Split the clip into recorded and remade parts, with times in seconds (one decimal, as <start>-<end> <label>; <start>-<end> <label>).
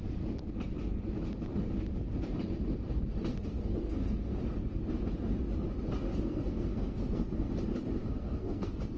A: 0.0-3.3 recorded; 3.3-4.4 remade; 4.4-6.1 recorded; 6.1-7.5 remade; 7.5-8.0 recorded; 8.0-9.0 remade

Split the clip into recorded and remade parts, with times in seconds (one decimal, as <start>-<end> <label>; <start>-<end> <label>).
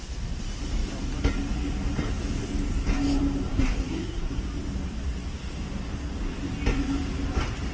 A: 0.0-3.5 recorded; 3.5-4.4 remade; 4.4-7.7 recorded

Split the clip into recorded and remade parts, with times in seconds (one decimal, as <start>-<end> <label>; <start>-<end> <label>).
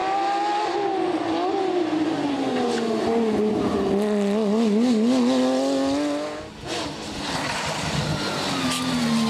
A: 0.0-9.3 recorded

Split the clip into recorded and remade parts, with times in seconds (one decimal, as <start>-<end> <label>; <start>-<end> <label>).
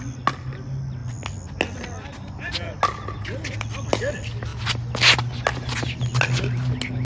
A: 0.0-7.0 recorded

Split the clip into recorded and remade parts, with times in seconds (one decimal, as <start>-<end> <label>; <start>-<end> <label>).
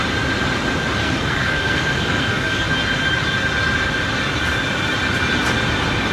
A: 0.0-1.0 recorded; 1.0-2.7 remade; 2.7-6.1 recorded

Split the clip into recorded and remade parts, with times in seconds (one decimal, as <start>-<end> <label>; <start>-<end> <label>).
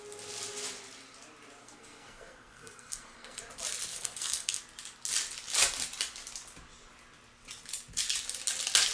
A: 0.0-1.6 recorded; 1.6-3.4 remade; 3.4-3.9 recorded; 3.9-4.6 remade; 4.6-8.9 recorded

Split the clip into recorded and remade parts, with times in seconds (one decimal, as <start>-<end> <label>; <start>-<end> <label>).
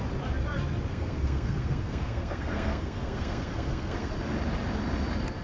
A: 0.0-0.9 recorded; 0.9-4.1 remade; 4.1-5.4 recorded